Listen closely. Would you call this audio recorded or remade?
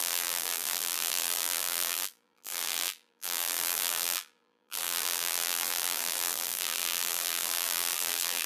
remade